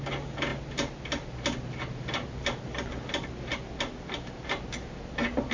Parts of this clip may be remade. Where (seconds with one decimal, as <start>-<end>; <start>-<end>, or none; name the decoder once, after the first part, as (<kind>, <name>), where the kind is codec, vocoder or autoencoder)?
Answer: none